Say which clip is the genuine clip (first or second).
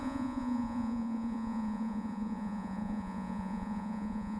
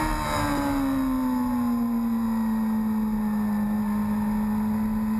second